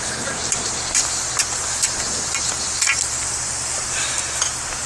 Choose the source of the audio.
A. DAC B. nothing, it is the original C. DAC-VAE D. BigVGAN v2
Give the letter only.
B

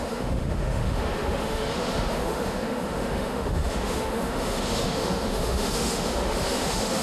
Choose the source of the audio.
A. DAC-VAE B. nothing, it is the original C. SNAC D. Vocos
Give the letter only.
A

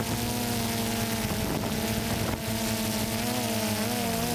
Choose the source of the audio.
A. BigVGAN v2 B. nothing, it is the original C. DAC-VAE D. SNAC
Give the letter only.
B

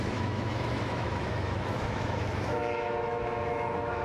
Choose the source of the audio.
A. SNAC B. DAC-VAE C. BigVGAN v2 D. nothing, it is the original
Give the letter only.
B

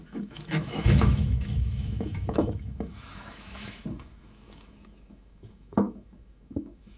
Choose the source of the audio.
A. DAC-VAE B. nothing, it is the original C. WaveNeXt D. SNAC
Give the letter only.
A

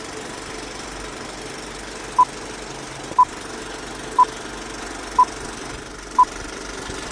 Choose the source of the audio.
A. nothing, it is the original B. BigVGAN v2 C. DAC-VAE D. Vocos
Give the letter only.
A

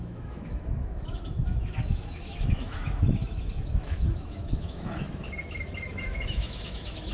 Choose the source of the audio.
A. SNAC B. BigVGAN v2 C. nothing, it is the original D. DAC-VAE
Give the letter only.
D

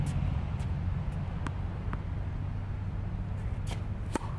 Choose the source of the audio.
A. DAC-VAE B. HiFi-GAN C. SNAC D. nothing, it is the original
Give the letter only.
D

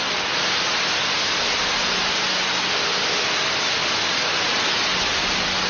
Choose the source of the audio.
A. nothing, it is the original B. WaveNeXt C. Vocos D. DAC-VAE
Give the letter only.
A